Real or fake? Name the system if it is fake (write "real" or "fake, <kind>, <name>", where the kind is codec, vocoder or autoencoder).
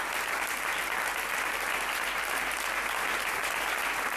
real